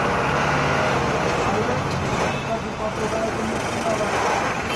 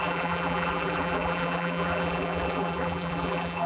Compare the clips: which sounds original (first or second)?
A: first